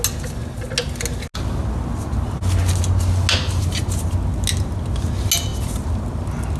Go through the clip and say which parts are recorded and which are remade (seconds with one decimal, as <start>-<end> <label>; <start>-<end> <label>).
0.0-6.6 recorded

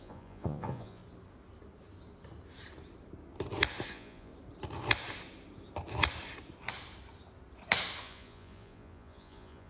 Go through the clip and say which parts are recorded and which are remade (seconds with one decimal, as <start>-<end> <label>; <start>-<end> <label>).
0.0-1.0 remade; 1.0-3.9 recorded; 3.9-4.3 remade; 4.3-8.0 recorded; 8.0-9.7 remade